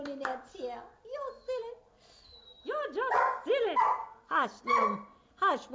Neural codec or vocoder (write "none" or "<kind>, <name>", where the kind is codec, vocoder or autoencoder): none